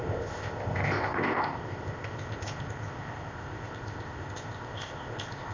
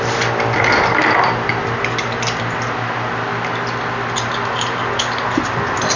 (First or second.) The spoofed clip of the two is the first